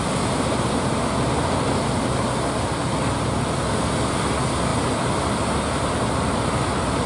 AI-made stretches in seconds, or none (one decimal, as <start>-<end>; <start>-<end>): none